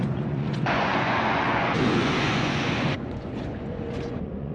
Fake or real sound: fake